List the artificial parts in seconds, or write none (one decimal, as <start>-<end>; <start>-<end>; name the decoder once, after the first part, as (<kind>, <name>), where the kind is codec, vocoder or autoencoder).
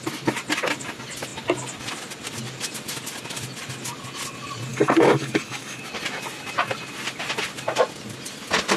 4.7-5.8 (codec, DAC)